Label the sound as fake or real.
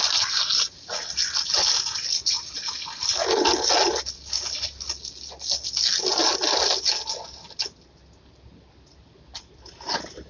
real